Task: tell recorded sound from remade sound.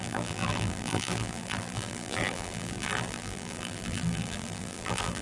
remade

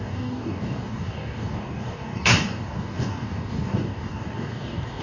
remade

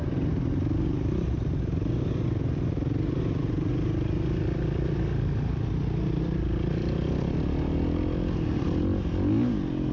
recorded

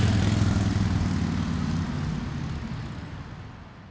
recorded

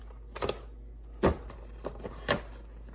recorded